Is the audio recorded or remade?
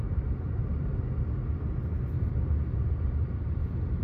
recorded